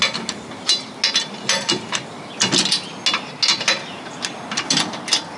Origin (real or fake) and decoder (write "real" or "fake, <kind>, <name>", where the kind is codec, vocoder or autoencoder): real